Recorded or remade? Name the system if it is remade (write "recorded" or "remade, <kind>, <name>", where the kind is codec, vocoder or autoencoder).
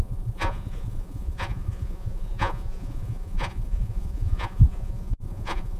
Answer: remade, vocoder, Vocos